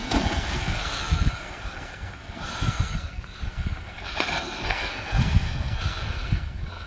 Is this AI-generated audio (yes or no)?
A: yes